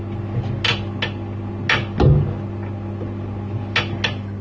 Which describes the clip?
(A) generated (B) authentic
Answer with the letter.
B